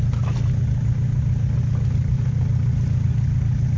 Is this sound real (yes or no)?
yes